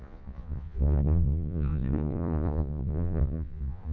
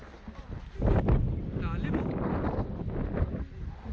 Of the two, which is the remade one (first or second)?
first